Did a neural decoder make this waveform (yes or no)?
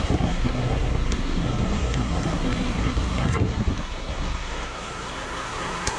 yes